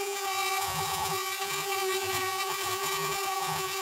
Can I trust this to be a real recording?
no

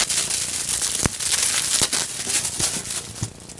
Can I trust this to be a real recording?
yes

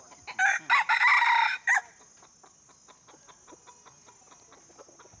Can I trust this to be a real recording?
yes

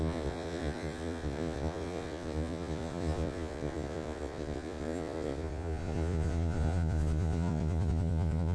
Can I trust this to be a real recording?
no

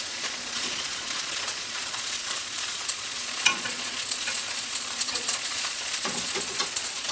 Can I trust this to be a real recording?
no